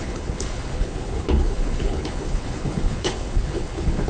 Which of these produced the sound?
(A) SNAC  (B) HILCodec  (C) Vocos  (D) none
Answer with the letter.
B